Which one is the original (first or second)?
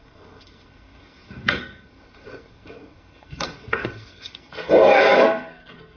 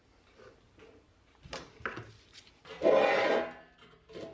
second